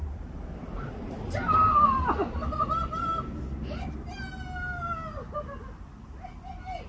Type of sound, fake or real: real